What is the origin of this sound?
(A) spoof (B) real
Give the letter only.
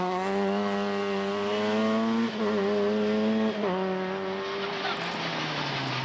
B